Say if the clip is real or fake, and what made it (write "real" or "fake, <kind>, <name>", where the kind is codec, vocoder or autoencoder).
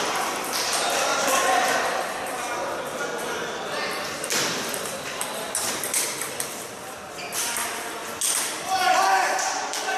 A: real